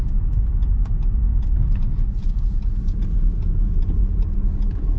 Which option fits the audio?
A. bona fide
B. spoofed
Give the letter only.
B